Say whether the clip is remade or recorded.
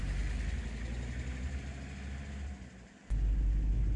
recorded